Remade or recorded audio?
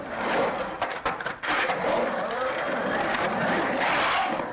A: remade